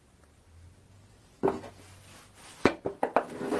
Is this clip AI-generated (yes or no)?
no